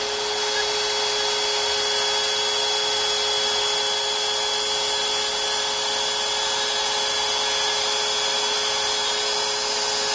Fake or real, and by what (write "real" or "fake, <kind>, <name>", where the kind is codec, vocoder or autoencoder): real